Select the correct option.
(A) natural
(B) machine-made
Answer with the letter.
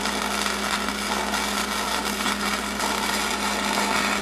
A